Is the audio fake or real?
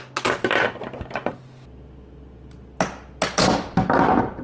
real